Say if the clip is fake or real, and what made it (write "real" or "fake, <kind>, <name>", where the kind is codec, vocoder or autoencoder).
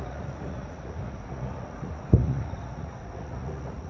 fake, vocoder, Vocos